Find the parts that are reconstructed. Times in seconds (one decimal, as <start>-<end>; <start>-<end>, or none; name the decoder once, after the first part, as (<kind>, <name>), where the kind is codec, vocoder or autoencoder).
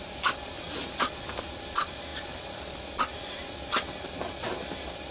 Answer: none